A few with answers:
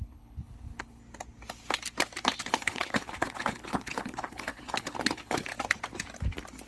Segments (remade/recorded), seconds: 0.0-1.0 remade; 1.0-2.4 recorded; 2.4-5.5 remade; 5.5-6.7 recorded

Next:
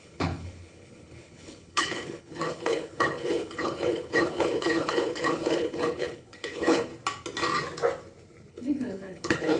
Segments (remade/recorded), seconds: 0.0-6.9 remade; 6.9-8.5 recorded; 8.5-9.6 remade